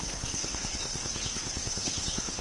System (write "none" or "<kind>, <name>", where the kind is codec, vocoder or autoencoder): codec, HILCodec